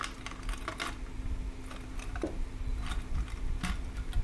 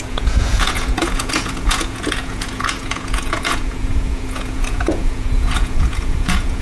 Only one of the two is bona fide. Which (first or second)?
first